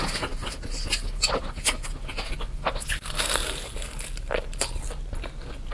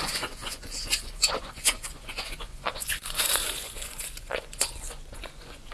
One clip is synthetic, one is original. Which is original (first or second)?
first